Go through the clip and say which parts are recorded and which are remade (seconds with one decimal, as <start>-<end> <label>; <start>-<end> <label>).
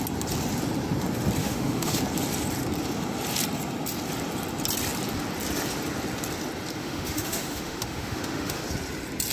0.0-1.4 recorded; 1.4-2.0 remade; 2.0-6.8 recorded; 6.8-8.6 remade; 8.6-9.3 recorded